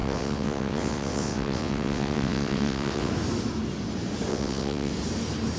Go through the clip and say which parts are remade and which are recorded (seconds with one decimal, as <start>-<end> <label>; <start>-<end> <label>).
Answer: 0.0-3.1 remade; 3.1-4.3 recorded; 4.3-4.9 remade; 4.9-5.6 recorded